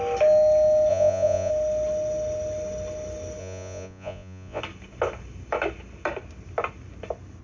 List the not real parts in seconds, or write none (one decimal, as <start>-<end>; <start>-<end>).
0.9-1.5; 3.4-4.6

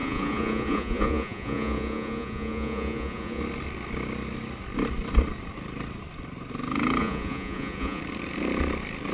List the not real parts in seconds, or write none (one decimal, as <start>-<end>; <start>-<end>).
0.0-3.4; 7.0-8.0

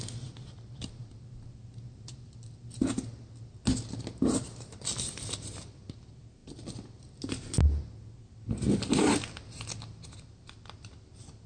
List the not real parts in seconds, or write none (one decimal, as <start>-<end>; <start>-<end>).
none

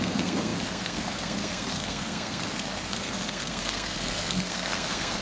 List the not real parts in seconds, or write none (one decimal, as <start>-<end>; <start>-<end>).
0.0-5.2

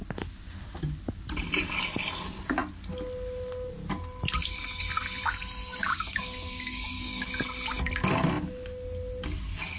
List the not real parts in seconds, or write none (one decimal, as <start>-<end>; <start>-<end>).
5.6-7.3

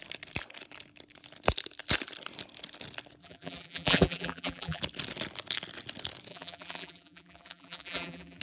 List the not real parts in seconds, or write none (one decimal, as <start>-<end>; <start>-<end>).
3.2-4.8; 6.3-8.4

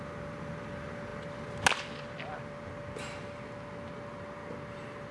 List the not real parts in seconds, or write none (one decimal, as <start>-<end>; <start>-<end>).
none